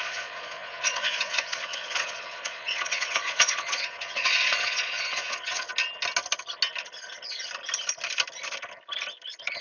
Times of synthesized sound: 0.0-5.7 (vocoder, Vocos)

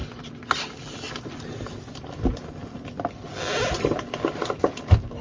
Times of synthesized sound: none

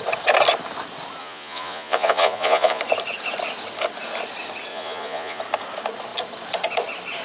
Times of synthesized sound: 1.2-2.8 (vocoder, Vocos); 4.7-5.4

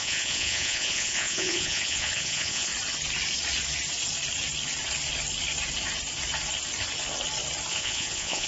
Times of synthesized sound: 0.0-2.7 (vocoder, Vocos); 7.7-8.5

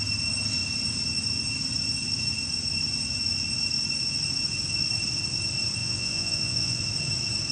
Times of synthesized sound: 5.8-6.8 (vocoder, Vocos)